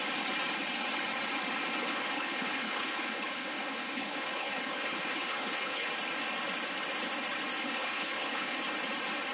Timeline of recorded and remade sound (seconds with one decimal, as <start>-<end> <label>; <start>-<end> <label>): 0.0-1.9 recorded; 1.9-5.9 remade; 5.9-7.6 recorded; 7.6-8.6 remade; 8.6-9.3 recorded